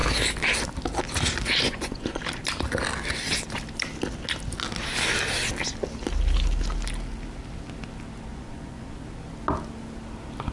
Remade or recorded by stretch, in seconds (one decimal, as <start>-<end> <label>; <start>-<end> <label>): 0.0-1.6 recorded; 1.6-2.2 remade; 2.2-8.3 recorded; 8.3-8.9 remade; 8.9-10.5 recorded